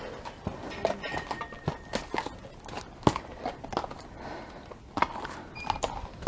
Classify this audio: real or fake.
real